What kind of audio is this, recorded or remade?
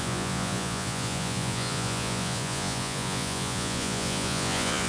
remade